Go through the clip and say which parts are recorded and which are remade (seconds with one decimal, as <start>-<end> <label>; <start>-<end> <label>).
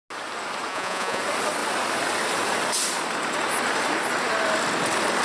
0.0-0.7 recorded; 0.7-1.2 remade; 1.2-5.2 recorded